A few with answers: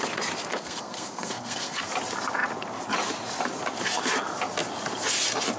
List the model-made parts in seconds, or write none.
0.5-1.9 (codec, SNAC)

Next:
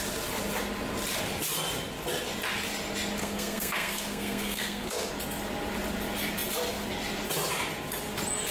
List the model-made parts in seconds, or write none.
3.2-5.1 (codec, SNAC)

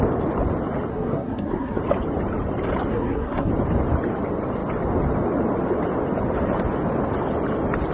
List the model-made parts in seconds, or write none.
0.9-1.8 (codec, SNAC); 2.9-3.5